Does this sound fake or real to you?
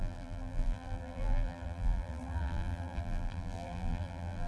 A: fake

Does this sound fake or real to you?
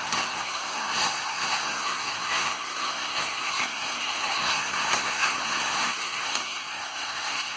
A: fake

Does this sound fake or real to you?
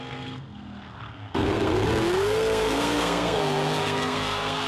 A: fake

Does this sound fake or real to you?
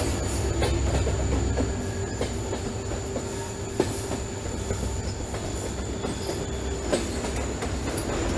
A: real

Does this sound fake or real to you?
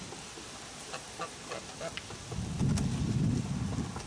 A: real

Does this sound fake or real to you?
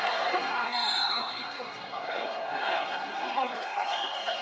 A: fake